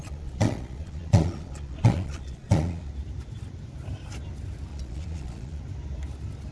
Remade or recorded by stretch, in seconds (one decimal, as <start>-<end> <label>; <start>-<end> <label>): 0.0-2.9 remade; 2.9-4.7 recorded; 4.7-5.6 remade; 5.6-6.5 recorded